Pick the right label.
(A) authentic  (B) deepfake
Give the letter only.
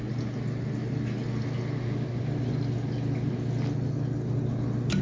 A